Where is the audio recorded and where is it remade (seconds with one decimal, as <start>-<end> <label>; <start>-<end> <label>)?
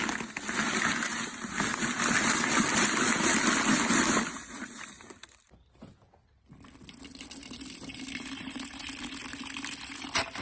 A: 0.0-10.4 recorded